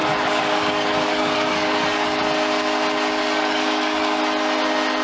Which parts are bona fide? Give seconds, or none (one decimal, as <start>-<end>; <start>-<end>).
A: 2.2-3.2; 4.2-5.0